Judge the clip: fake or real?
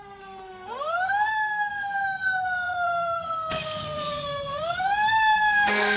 fake